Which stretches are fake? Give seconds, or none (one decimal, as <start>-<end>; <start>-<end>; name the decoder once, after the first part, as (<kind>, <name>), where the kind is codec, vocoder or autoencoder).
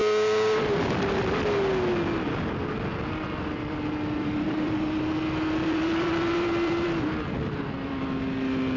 0.0-0.9 (vocoder, BigVGAN v2); 2.9-8.0